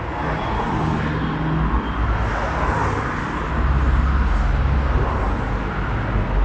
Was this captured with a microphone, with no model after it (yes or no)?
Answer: yes